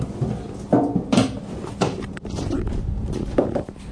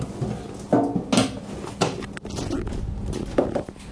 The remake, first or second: first